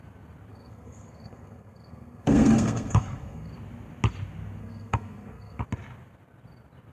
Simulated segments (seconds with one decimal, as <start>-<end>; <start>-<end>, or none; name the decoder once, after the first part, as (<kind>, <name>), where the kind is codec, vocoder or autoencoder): 0.5-3.5 (codec, SNAC); 4.6-5.6